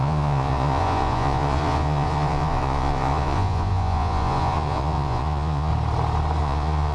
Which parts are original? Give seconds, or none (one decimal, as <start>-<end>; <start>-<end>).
5.7-6.4